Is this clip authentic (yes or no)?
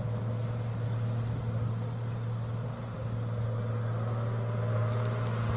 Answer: yes